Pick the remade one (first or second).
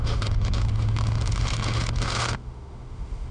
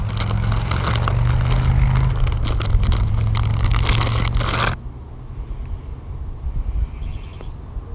first